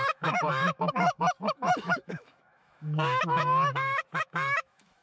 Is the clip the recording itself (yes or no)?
no